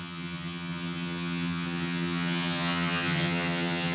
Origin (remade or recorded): remade